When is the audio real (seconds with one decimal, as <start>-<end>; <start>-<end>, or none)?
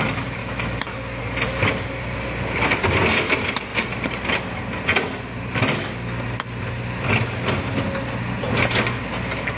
0.0-0.4; 1.2-9.6